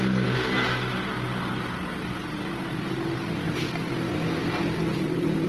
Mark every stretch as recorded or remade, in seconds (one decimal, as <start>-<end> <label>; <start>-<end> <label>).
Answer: 0.0-5.5 recorded